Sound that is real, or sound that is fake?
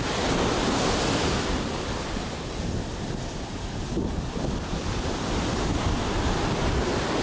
real